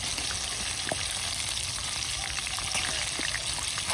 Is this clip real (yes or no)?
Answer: yes